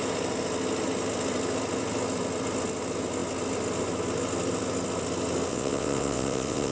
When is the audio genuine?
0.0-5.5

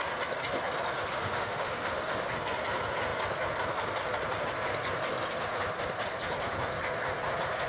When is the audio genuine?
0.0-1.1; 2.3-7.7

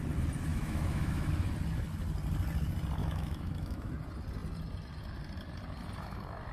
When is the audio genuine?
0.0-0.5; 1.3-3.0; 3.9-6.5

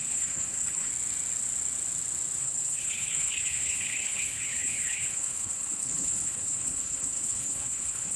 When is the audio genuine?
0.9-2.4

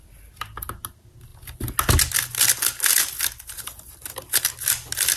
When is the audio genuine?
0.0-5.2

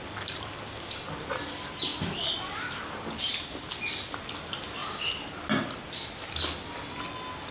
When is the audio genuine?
0.0-7.5

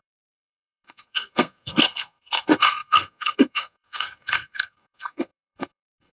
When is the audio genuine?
none

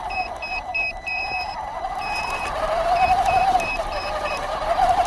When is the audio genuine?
none